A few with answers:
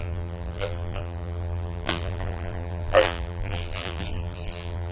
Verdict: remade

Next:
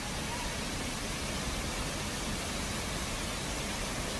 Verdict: recorded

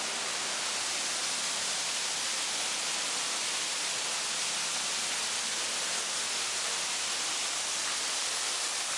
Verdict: recorded